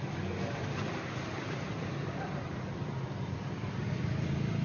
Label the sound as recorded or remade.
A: recorded